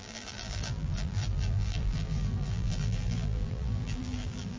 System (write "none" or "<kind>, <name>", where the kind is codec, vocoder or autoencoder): vocoder, BigVGAN v2